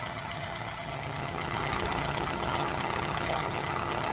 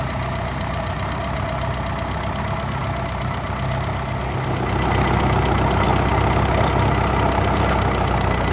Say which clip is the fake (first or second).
first